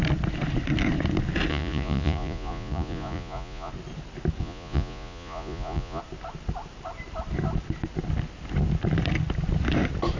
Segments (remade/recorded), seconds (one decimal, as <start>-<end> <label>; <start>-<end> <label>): 0.0-1.5 recorded; 1.5-3.7 remade; 3.7-4.4 recorded; 4.4-6.0 remade; 6.0-10.2 recorded